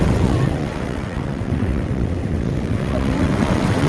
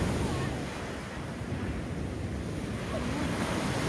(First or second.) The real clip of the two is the second